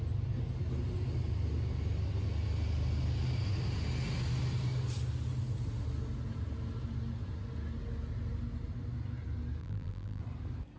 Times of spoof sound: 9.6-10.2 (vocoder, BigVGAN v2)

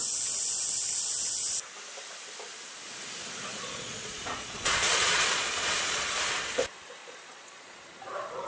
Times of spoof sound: 3.5-6.2 (vocoder, Vocos); 7.0-7.8

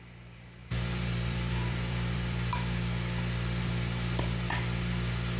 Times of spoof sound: 0.6-2.5 (vocoder, BigVGAN v2)

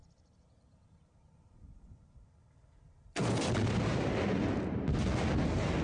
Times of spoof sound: none